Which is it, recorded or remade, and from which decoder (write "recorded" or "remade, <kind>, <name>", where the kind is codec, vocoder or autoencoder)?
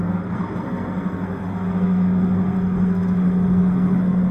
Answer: remade, codec, SNAC